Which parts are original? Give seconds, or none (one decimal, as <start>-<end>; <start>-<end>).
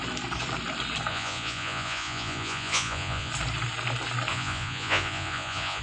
0.0-1.1; 3.3-4.3